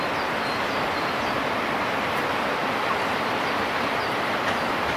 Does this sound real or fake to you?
real